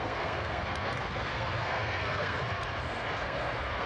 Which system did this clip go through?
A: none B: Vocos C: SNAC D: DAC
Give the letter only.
C